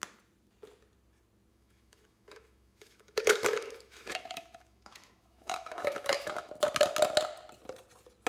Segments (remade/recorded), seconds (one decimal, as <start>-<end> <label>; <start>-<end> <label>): 0.0-1.5 recorded; 1.5-6.5 remade; 6.5-8.3 recorded